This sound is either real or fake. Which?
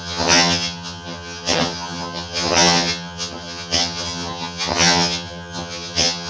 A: fake